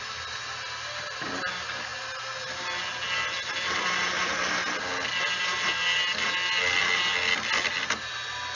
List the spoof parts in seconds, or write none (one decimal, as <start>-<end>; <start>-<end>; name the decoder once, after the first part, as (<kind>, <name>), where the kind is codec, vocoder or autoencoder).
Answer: none